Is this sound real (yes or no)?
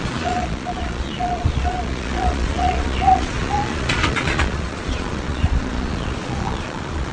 no